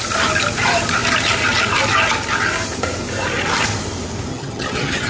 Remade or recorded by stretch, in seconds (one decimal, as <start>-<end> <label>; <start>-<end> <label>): 0.0-4.3 recorded; 4.3-5.1 remade